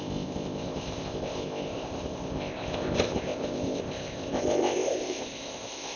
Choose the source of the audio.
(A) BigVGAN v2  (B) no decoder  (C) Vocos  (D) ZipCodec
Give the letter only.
D